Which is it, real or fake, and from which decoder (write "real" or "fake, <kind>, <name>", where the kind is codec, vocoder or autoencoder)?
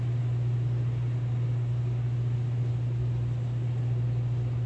real